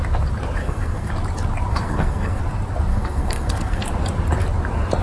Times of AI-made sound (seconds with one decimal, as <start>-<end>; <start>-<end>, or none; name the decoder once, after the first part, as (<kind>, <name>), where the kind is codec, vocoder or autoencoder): 0.6-1.1 (codec, SNAC); 1.7-2.4; 2.9-3.9